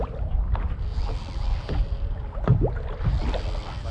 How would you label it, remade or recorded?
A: recorded